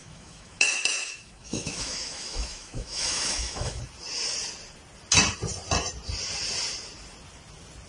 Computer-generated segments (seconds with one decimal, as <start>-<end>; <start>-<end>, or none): 0.0-3.8